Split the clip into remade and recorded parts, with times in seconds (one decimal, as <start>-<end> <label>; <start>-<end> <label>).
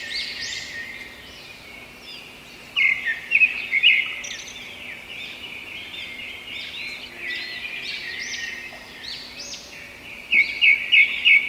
0.0-11.5 recorded